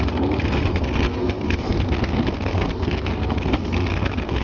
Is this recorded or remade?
remade